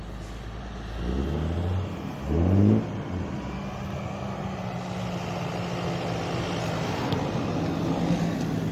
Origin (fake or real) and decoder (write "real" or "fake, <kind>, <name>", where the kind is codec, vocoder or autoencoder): real